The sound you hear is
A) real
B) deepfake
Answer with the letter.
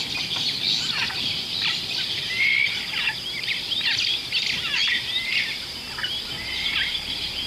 A